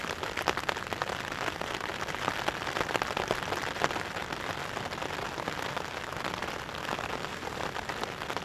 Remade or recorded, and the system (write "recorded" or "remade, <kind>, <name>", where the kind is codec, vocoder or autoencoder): recorded